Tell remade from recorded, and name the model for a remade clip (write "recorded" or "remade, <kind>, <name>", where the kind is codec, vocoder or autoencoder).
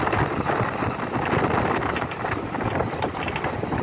recorded